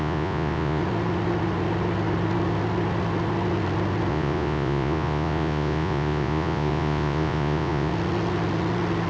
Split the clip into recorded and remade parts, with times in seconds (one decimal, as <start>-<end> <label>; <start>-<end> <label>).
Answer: 0.0-0.8 remade; 0.8-4.1 recorded; 4.1-7.9 remade; 7.9-9.1 recorded